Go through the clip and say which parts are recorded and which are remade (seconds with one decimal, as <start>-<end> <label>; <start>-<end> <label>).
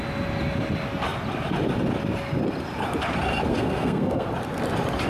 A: 0.0-3.5 recorded; 3.5-4.3 remade; 4.3-5.1 recorded